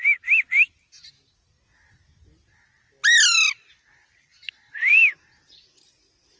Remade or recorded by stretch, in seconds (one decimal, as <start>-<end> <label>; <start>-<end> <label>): 0.0-6.4 recorded